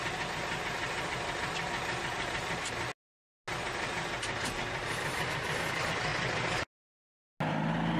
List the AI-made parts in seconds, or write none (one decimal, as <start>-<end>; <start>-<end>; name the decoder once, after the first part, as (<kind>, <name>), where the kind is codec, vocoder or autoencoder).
none